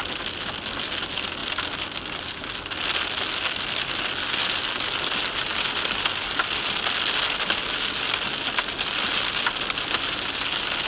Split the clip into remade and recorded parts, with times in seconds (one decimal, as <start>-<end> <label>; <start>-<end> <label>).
0.0-10.9 recorded